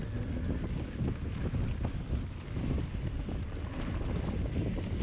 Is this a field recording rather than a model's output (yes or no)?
yes